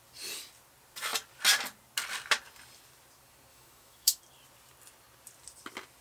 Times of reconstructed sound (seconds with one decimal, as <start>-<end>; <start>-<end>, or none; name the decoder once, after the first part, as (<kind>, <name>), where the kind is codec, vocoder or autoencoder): 3.5-4.2 (autoencoder, DAC-VAE)